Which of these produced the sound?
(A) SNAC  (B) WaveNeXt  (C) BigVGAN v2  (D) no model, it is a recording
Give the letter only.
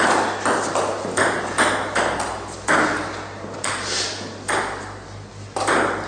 D